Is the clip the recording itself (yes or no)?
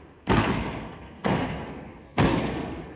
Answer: no